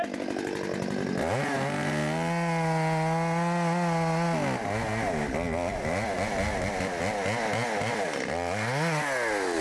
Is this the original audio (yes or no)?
yes